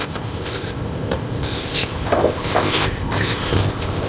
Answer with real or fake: fake